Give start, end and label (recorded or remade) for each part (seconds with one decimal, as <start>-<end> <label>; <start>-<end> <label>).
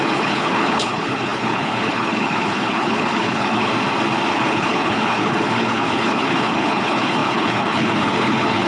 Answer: 0.0-3.7 remade; 3.7-4.3 recorded; 4.3-8.7 remade